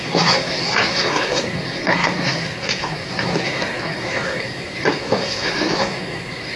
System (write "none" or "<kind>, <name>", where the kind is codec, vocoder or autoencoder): codec, SNAC